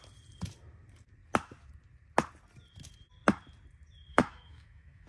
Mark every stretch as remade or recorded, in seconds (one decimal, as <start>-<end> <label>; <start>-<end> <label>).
0.0-4.1 recorded; 4.1-5.1 remade